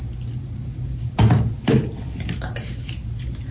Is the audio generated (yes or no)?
no